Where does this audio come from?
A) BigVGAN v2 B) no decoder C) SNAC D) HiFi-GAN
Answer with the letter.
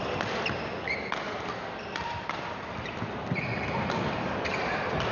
B